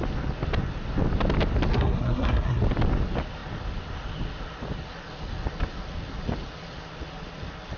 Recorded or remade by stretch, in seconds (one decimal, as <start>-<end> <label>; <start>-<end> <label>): 0.0-1.7 recorded; 1.7-2.6 remade; 2.6-7.8 recorded